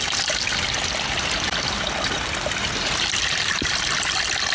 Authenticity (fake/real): real